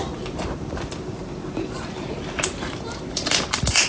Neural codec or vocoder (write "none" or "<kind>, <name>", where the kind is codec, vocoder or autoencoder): none